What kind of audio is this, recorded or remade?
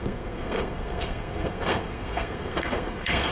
remade